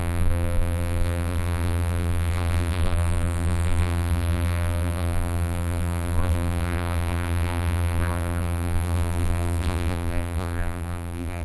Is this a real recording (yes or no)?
no